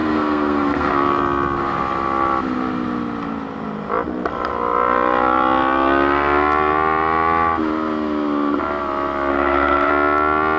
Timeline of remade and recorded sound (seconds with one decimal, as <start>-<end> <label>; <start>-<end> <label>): 0.0-0.9 remade; 0.9-9.3 recorded; 9.3-9.9 remade; 9.9-10.6 recorded